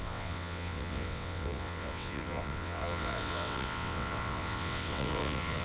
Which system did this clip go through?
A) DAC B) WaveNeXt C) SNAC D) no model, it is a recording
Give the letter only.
B